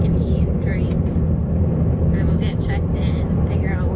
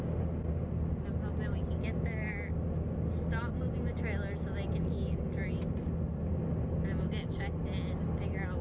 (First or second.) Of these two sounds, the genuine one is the second